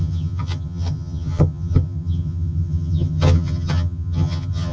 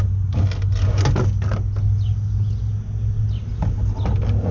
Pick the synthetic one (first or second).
first